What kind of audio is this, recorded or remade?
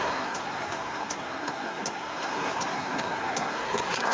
remade